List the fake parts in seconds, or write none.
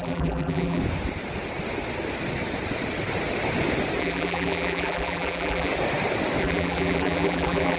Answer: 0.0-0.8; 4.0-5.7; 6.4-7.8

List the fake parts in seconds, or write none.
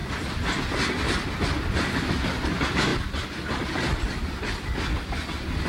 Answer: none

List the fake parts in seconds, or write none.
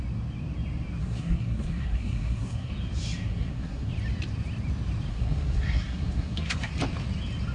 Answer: 1.0-2.7; 3.2-3.9; 5.1-6.7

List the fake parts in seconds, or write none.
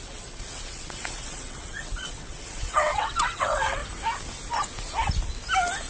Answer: 0.0-3.8